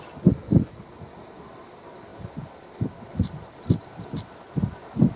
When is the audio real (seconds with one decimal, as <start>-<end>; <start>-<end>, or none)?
0.0-5.2